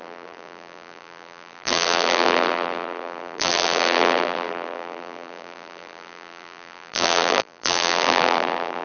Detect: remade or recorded remade